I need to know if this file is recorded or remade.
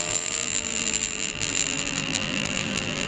remade